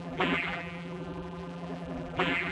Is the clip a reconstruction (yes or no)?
yes